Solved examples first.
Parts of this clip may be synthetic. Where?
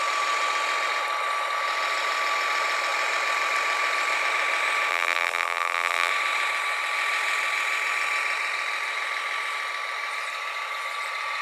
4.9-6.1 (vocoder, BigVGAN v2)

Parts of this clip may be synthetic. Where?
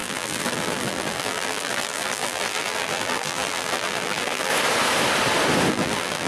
0.0-4.5 (vocoder, BigVGAN v2); 5.7-6.3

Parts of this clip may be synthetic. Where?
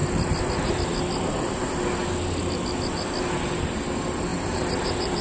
4.3-5.2 (vocoder, BigVGAN v2)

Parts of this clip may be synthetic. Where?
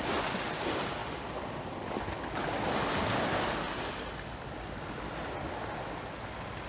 none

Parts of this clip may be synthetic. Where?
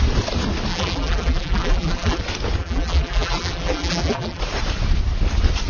0.7-2.2 (vocoder, BigVGAN v2); 2.6-4.4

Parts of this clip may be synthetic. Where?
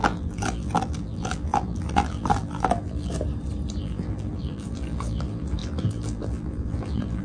0.0-3.1 (vocoder, BigVGAN v2); 3.8-7.2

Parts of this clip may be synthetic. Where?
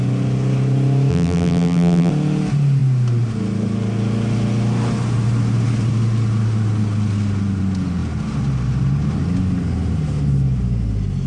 1.1-2.1 (vocoder, BigVGAN v2)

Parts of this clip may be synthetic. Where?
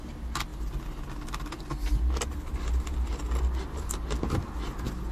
none